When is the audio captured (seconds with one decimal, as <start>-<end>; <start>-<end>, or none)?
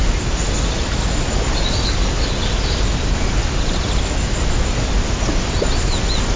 0.0-6.4